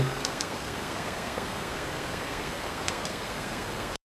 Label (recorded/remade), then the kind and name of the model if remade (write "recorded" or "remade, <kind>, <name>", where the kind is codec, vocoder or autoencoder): remade, codec, SNAC